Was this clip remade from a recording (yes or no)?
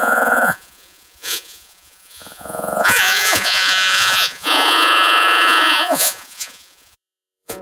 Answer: yes